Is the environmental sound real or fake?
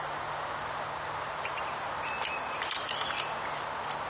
real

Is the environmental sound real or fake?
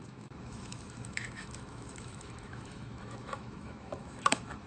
fake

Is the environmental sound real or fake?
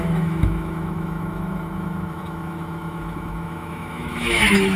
fake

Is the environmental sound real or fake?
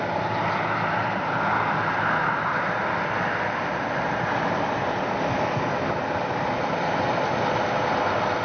real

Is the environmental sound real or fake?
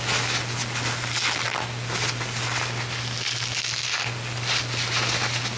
real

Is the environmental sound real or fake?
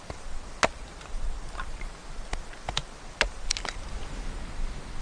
real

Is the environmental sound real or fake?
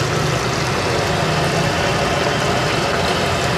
real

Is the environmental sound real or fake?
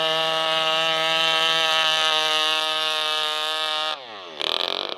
real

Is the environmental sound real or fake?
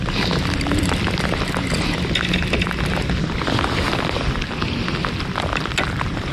real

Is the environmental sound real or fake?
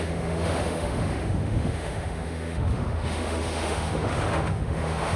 fake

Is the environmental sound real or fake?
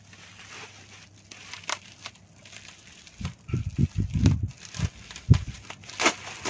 real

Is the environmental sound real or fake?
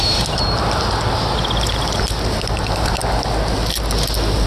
real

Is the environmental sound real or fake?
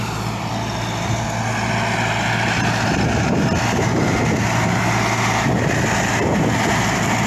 real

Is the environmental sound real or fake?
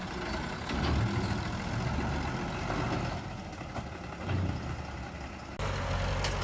real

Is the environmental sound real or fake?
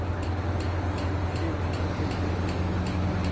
real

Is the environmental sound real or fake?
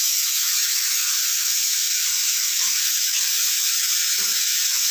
fake